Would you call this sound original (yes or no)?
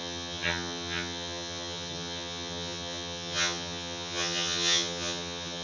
no